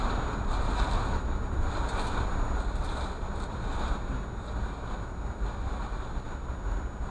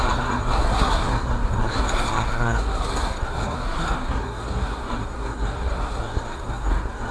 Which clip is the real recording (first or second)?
first